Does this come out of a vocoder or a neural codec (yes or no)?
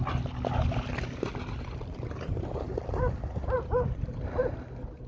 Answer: no